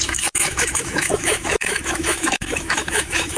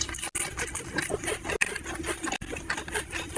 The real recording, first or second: second